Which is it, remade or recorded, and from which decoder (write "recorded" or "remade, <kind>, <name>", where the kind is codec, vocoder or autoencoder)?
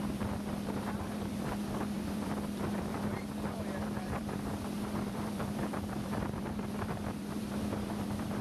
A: remade, vocoder, BigVGAN v2